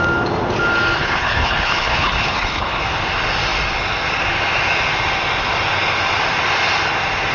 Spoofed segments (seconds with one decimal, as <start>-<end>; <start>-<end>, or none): 1.0-2.8